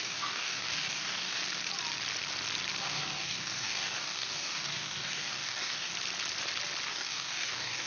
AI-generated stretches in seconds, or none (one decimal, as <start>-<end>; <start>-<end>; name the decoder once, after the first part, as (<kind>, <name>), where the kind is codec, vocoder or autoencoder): 0.0-1.4 (codec, DAC); 2.8-5.9; 6.9-7.9